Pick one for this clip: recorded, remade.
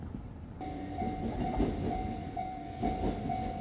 recorded